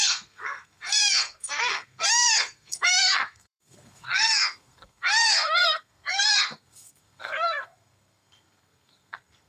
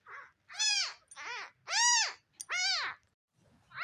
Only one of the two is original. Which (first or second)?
second